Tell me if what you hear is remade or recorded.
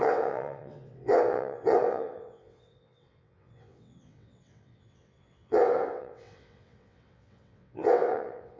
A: remade